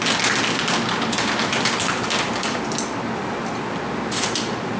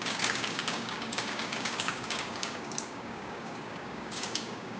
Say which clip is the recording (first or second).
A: first